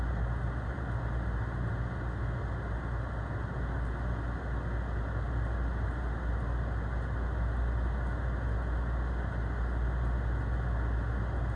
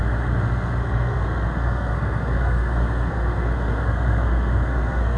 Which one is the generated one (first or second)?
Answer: second